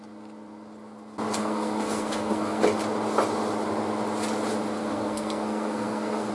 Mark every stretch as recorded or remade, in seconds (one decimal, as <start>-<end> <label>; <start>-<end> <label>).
0.0-1.4 recorded; 1.4-2.6 remade; 2.6-4.8 recorded; 4.8-6.3 remade